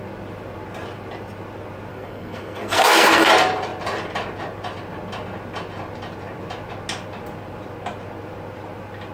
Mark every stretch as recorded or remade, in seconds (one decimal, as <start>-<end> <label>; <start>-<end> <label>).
0.0-1.9 recorded; 1.9-3.3 remade; 3.3-9.1 recorded